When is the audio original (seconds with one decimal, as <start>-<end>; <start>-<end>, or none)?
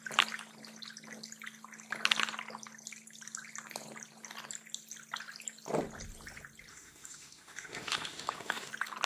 0.0-6.7; 8.7-9.1